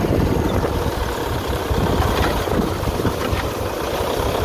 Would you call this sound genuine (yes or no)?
yes